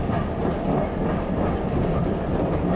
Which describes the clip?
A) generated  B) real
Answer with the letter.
B